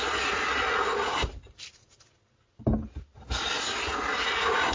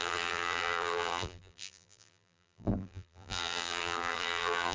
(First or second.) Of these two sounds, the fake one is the second